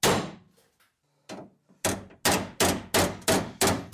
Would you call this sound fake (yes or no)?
no